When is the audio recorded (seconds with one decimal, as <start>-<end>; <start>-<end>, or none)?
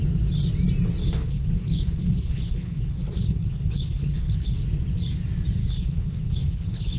0.0-1.0; 4.6-5.6